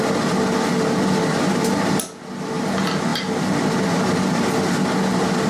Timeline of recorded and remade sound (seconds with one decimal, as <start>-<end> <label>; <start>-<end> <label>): 0.0-5.5 recorded